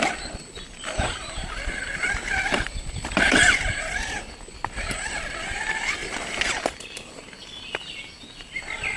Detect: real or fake fake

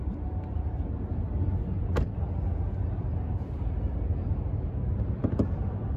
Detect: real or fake real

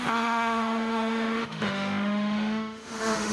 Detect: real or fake fake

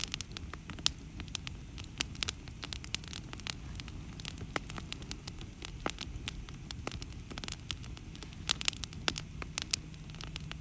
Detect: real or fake real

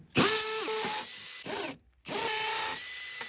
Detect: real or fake real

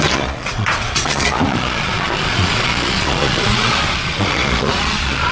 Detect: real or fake fake